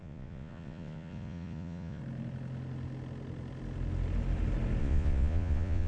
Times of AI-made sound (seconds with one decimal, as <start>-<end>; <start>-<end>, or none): 0.0-2.0; 4.8-5.9

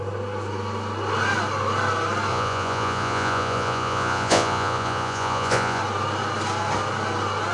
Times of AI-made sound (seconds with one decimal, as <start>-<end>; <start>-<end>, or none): 2.3-5.8

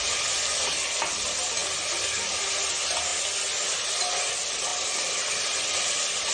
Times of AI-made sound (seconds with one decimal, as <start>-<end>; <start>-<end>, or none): none